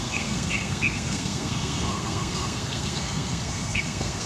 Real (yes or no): no